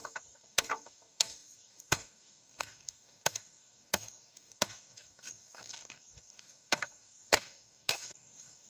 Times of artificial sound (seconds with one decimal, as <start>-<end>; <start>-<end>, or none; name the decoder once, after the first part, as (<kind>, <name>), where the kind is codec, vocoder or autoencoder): 0.0-8.7 (codec, DAC)